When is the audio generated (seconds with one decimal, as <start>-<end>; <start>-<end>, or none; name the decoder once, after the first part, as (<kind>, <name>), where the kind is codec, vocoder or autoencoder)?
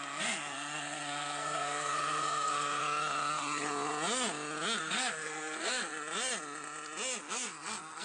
0.0-2.8 (codec, SNAC); 4.8-5.9; 7.2-8.0